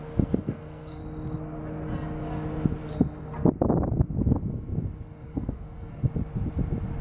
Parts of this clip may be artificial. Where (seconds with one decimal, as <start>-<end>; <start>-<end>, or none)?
0.0-1.0; 5.2-6.0